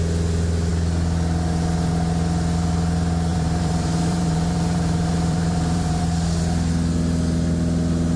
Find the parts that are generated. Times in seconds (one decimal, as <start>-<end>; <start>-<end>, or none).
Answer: 3.3-6.0